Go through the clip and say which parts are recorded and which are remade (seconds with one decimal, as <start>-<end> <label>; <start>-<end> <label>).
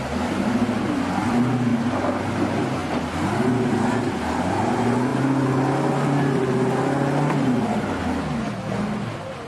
0.0-9.5 recorded